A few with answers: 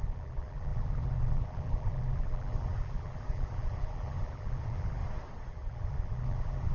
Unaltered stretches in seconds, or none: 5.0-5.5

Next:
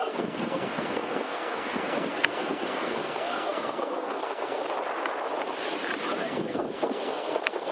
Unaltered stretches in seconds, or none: 4.6-6.2

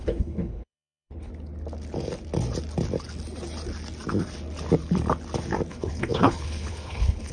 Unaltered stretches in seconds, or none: 1.3-5.7

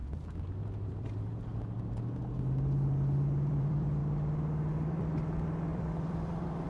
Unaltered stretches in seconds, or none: 0.0-0.9; 1.3-3.5; 4.0-4.9

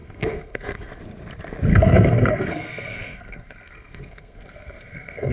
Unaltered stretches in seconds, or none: 1.0-1.7

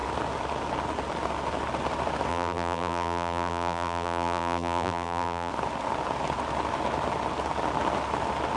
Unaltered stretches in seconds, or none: 0.0-2.3; 5.5-8.6

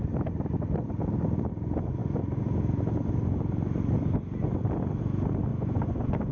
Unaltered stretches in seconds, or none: 0.0-5.5